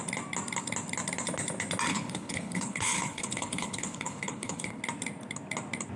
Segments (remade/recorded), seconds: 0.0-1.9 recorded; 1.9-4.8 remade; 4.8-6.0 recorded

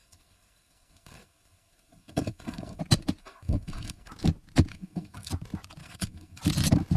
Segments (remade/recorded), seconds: 0.0-2.8 remade; 2.8-3.2 recorded; 3.2-4.1 remade; 4.1-4.7 recorded; 4.7-5.3 remade; 5.3-5.8 recorded; 5.8-6.4 remade; 6.4-7.0 recorded